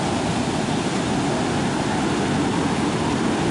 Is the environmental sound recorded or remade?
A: recorded